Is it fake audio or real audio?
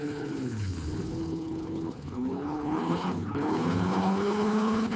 fake